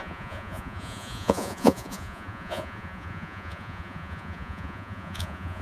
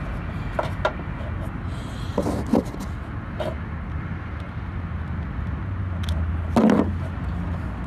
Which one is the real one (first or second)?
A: second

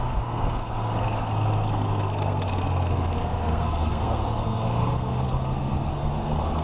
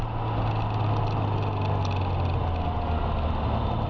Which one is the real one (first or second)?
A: second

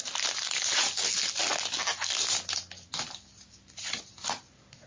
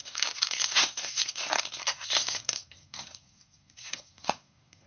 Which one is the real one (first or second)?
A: first